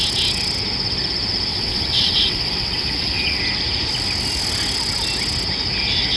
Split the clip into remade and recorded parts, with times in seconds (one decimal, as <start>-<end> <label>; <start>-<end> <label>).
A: 0.0-1.5 recorded; 1.5-3.4 remade; 3.4-6.2 recorded